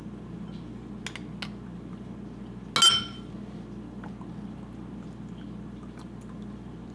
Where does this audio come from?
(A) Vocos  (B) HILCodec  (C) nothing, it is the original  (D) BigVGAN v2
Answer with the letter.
C